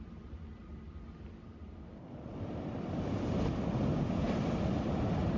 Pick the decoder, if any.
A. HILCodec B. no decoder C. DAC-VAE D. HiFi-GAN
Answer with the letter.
B